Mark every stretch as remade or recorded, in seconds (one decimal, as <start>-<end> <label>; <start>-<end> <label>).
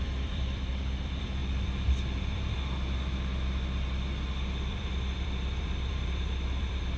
0.0-1.4 remade; 1.4-2.2 recorded; 2.2-7.0 remade